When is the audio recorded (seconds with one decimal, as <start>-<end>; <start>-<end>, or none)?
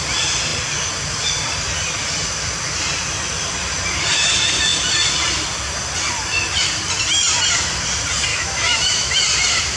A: 0.0-8.3; 9.1-9.8